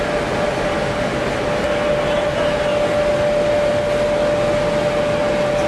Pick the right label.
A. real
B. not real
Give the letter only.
A